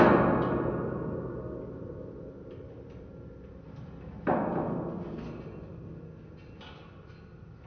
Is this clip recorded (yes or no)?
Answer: yes